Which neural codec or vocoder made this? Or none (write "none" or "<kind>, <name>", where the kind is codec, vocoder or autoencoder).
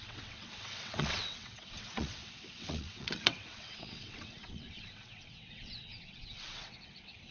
vocoder, WaveNeXt